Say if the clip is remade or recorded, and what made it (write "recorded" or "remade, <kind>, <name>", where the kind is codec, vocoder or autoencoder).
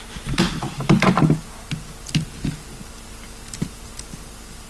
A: recorded